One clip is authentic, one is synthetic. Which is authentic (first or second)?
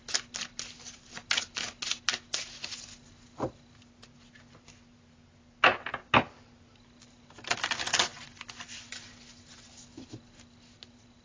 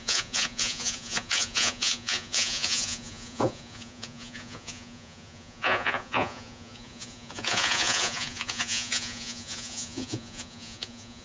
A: first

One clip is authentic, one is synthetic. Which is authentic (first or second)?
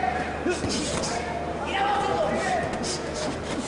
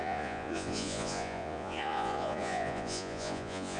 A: first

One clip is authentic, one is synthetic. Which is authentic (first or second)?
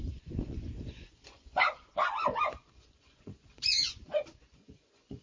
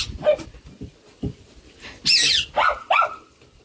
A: second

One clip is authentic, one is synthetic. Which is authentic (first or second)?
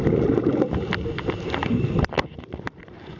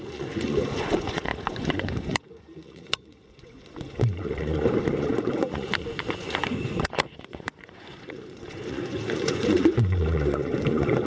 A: first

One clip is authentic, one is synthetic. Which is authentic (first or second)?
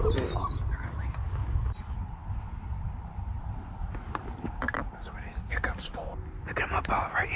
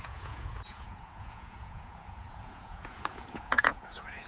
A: first